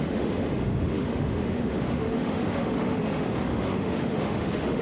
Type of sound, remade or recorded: remade